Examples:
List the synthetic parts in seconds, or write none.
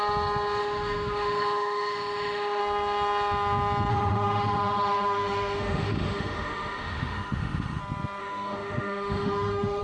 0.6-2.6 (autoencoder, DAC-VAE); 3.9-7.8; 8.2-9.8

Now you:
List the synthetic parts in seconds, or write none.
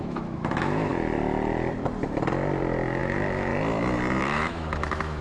0.0-0.9 (autoencoder, DAC-VAE); 3.0-3.5; 4.2-5.2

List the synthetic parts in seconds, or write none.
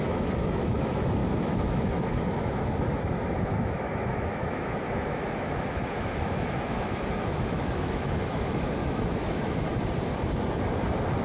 0.0-9.7 (autoencoder, DAC-VAE)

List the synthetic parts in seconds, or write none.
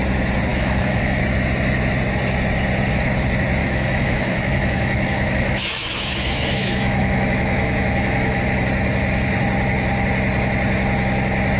0.5-1.2 (autoencoder, DAC-VAE); 3.6-8.4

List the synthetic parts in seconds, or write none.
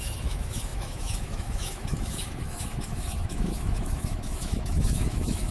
0.0-5.5 (autoencoder, DAC-VAE)